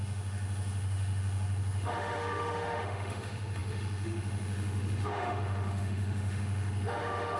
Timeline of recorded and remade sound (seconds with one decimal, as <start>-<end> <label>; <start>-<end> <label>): 0.0-7.4 remade